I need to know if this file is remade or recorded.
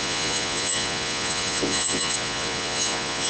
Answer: remade